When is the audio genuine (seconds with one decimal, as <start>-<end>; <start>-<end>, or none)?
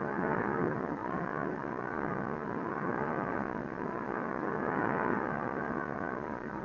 none